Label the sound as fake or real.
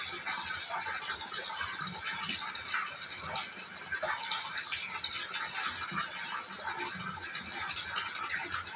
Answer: real